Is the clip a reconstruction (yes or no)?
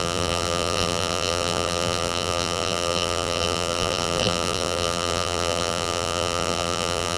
yes